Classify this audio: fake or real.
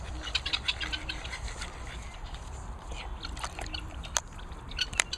fake